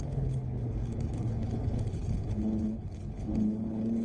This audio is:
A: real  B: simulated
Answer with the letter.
B